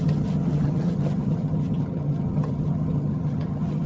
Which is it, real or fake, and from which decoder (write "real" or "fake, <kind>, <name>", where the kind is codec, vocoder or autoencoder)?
fake, vocoder, HiFi-GAN